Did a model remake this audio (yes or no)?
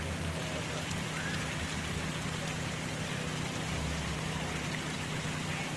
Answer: no